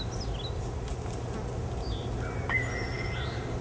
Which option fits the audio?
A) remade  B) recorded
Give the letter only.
B